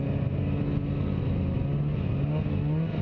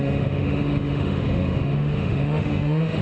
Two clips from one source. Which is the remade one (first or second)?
second